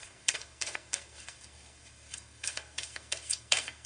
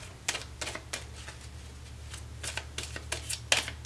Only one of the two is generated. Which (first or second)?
first